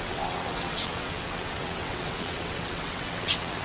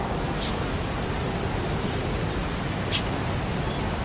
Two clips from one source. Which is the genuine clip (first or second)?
second